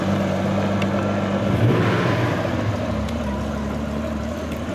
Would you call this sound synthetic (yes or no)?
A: no